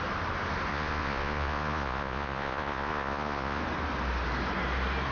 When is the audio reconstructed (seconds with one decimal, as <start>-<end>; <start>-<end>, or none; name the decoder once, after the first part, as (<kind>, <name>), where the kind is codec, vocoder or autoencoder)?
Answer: 0.7-3.6 (vocoder, Vocos)